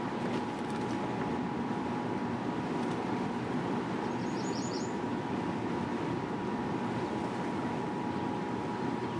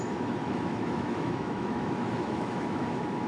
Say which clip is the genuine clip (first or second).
first